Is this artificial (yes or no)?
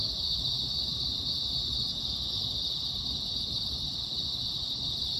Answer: no